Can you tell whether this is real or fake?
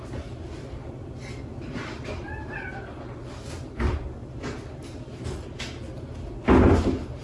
real